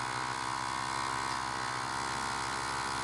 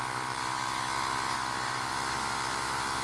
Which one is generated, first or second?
second